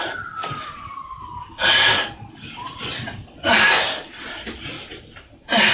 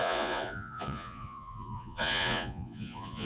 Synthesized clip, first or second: second